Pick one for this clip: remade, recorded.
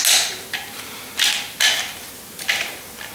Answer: recorded